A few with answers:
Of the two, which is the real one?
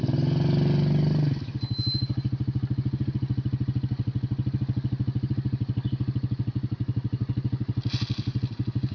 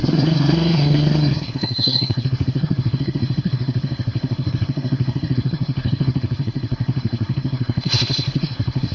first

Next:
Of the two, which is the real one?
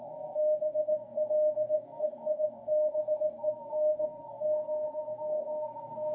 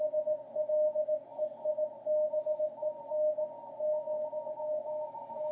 second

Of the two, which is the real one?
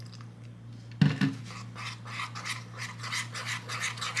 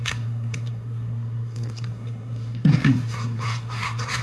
first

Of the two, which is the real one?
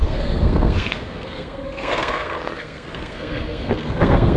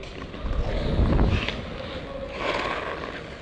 second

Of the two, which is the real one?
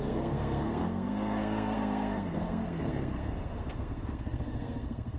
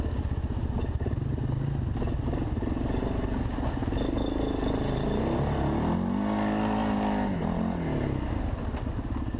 second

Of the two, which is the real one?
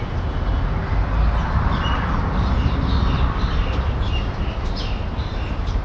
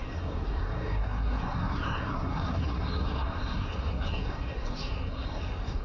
first